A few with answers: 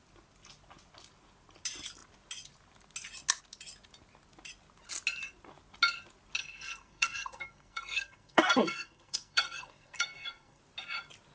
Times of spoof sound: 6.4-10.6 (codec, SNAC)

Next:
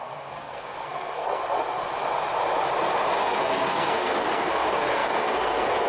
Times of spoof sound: 0.0-1.4 (codec, SNAC); 3.2-5.9

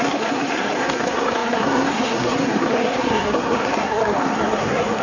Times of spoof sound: 0.0-5.0 (codec, SNAC)

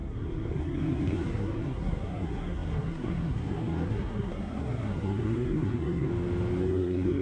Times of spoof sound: 0.0-6.1 (codec, SNAC); 6.6-7.2

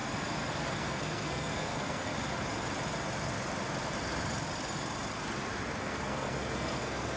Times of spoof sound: 0.6-2.1 (codec, SNAC); 5.8-7.2